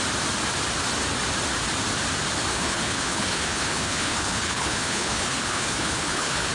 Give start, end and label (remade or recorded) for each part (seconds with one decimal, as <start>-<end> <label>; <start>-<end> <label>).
0.0-2.5 recorded; 2.5-6.5 remade